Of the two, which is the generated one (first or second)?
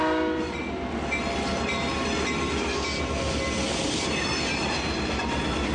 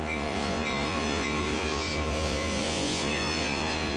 second